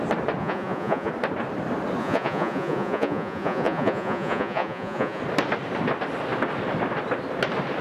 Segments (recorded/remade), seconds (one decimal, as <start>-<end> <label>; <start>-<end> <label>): 0.0-0.4 recorded; 0.4-1.1 remade; 1.1-2.0 recorded; 2.0-5.2 remade; 5.2-7.8 recorded